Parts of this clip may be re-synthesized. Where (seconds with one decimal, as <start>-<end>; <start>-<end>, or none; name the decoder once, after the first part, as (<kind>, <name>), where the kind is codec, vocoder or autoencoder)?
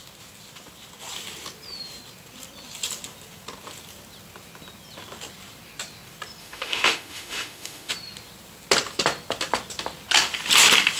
6.4-7.9 (autoencoder, DAC-VAE)